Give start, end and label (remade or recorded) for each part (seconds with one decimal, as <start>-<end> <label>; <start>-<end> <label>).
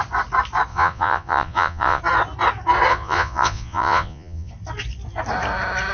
0.0-0.7 recorded; 0.7-2.0 remade; 2.0-2.9 recorded; 2.9-4.5 remade; 4.5-5.9 recorded